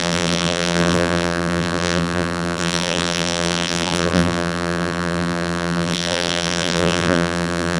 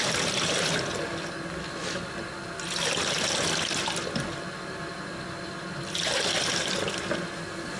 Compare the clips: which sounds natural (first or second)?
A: second